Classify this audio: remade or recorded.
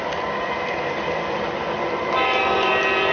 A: remade